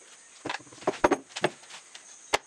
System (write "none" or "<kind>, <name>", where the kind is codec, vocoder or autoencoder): none